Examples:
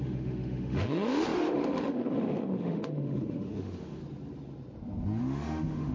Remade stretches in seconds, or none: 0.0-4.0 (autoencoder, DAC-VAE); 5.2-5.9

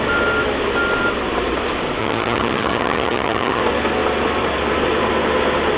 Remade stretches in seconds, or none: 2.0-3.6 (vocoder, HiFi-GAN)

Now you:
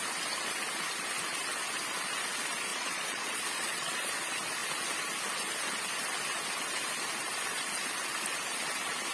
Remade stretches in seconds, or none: 2.7-4.1 (vocoder, Vocos)

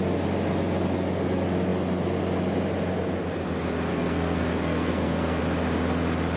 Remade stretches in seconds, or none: 3.9-5.4 (codec, SNAC)

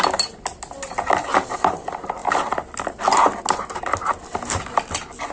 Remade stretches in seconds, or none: none

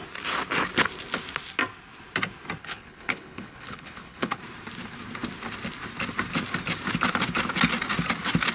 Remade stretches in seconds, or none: 2.6-4.4 (codec, HILCodec)

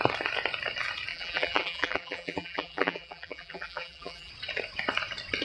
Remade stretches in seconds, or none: 1.1-4.3 (vocoder, BigVGAN v2)

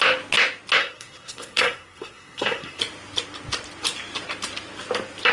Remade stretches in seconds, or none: 0.8-2.8 (codec, SNAC)